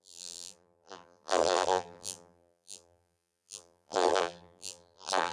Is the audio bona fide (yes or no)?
no